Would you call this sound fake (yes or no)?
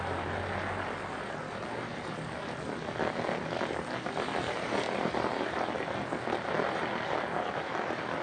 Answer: no